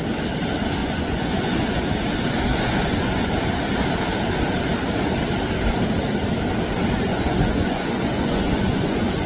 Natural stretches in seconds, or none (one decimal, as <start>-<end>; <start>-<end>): 0.0-0.8; 1.8-2.5; 3.3-7.1